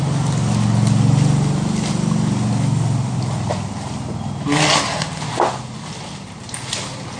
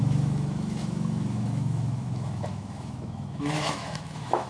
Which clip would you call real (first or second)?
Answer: first